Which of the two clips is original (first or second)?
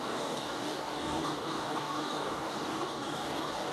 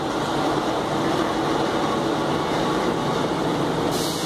second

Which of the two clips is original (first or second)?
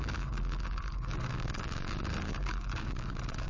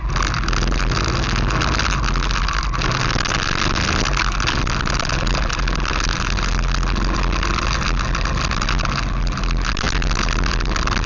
second